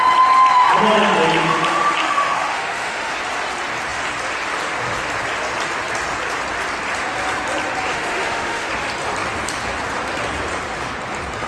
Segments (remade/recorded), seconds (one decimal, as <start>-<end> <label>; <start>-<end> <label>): 0.0-2.0 recorded; 2.0-3.1 remade; 3.1-7.9 recorded; 7.9-8.7 remade; 8.7-11.5 recorded

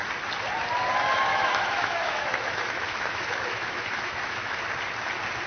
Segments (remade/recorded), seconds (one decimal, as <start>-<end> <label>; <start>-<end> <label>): 0.0-1.3 recorded; 1.3-4.6 remade; 4.6-5.5 recorded

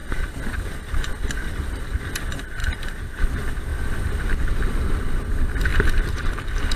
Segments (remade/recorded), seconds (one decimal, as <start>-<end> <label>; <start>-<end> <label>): 0.0-6.8 recorded

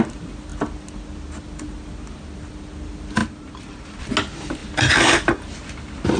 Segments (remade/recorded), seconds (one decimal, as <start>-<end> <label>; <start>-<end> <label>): 0.0-6.2 recorded